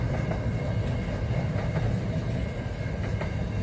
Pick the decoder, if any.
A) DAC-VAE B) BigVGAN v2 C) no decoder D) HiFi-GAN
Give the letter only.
C